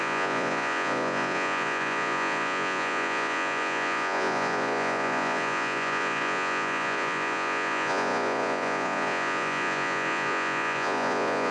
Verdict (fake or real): fake